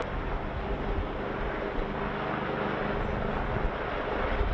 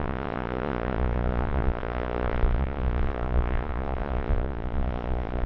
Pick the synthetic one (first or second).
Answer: second